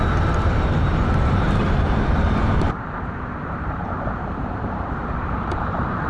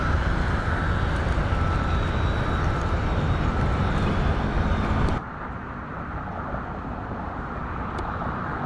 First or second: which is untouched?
second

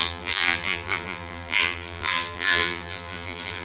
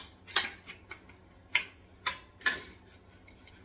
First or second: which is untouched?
second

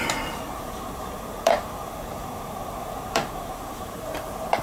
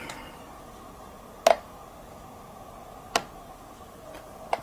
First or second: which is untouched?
second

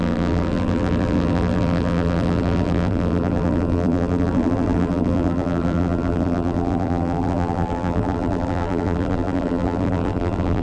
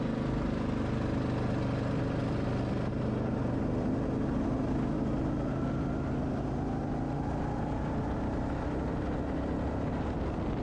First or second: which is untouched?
second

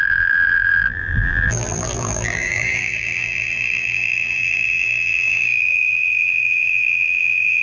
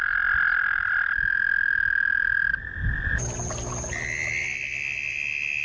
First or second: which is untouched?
second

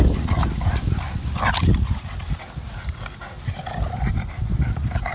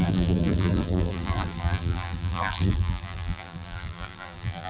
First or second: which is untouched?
first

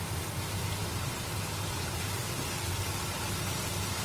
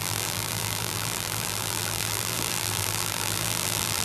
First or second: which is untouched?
first